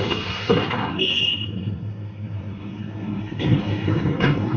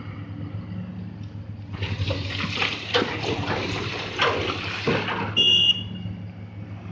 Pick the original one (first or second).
second